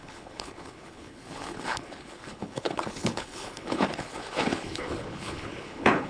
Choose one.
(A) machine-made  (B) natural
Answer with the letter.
A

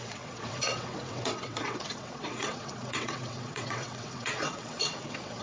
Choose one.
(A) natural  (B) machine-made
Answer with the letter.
B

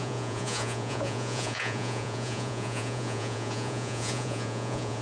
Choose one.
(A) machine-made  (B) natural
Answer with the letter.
A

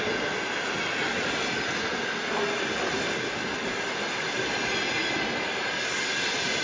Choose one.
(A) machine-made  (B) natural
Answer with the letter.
B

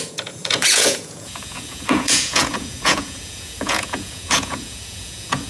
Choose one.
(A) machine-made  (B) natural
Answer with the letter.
A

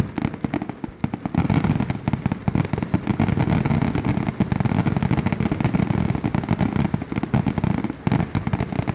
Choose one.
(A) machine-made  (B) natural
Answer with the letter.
B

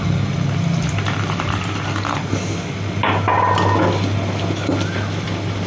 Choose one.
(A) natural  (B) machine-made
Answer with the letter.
A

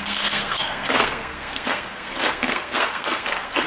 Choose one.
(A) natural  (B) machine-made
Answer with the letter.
B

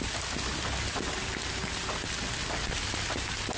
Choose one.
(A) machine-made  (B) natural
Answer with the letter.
B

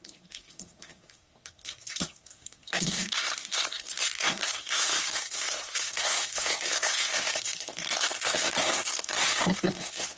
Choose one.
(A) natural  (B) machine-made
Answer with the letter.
B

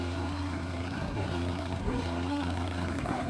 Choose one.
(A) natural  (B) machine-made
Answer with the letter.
B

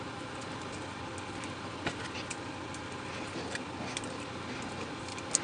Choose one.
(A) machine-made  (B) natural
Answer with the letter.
B